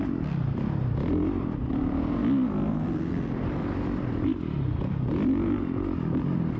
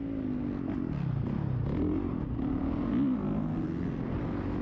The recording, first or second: second